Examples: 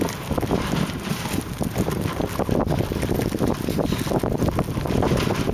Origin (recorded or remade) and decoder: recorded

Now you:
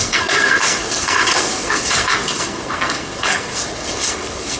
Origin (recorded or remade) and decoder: remade, codec, SNAC